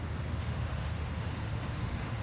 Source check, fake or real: fake